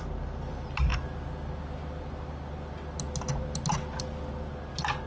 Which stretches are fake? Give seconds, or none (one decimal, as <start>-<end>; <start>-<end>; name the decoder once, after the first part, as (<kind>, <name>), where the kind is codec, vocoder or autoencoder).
none